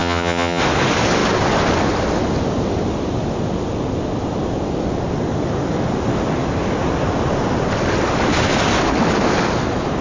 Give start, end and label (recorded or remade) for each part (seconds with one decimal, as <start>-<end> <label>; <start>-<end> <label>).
0.0-0.6 remade; 0.6-10.0 recorded